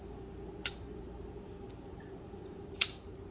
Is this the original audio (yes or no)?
yes